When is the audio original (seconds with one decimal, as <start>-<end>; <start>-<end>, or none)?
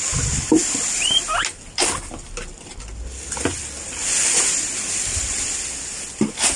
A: 0.0-6.6